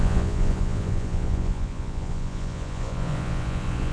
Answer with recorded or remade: remade